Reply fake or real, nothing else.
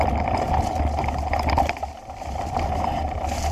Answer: real